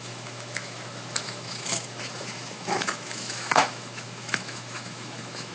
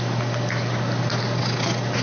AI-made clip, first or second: first